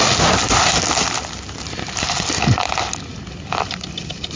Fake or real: real